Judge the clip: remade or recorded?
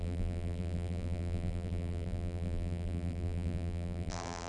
remade